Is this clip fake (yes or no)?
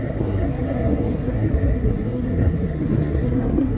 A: yes